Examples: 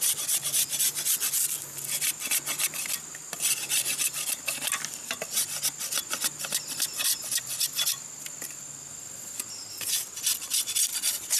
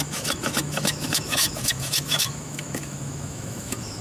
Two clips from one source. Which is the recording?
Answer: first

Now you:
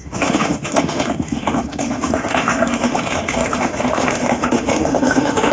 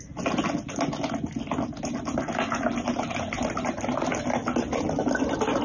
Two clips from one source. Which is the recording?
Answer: second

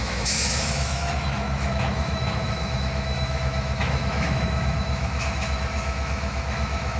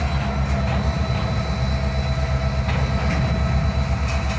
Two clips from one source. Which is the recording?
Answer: second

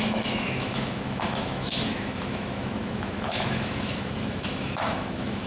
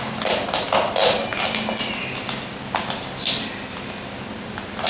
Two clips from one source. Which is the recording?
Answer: second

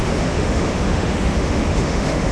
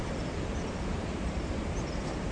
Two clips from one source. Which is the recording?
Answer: second